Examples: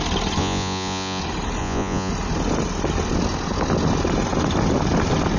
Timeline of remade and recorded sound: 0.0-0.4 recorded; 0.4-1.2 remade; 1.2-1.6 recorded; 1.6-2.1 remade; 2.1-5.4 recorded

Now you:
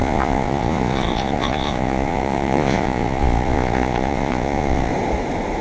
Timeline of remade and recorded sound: 0.0-4.9 remade; 4.9-5.6 recorded